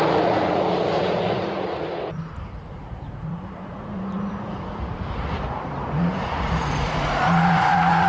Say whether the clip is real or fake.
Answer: fake